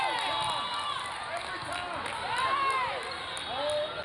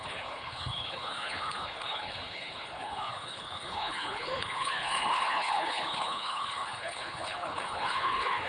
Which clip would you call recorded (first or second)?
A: first